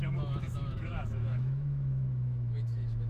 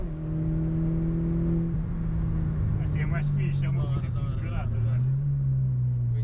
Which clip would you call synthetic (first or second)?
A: first